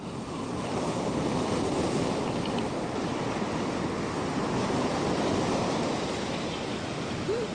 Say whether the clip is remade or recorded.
recorded